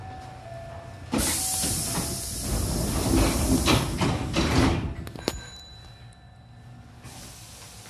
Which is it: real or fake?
real